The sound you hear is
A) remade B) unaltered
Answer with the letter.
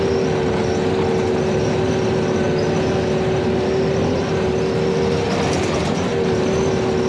B